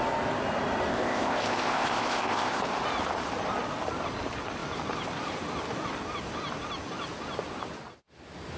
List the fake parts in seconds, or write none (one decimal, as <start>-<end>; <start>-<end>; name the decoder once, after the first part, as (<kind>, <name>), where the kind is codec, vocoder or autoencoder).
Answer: 0.9-2.6 (codec, ZipCodec)